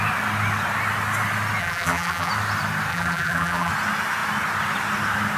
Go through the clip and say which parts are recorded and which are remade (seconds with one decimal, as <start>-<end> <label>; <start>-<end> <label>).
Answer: 0.0-1.6 recorded; 1.6-2.3 remade; 2.3-2.9 recorded; 2.9-3.7 remade; 3.7-5.4 recorded